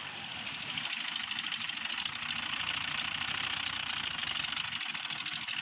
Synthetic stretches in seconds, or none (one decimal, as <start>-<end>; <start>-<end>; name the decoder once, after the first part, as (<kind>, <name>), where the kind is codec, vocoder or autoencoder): none